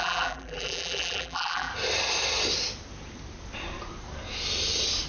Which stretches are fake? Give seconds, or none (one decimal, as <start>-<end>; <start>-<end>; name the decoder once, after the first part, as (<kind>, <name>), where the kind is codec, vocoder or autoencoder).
0.0-1.7 (vocoder, BigVGAN v2)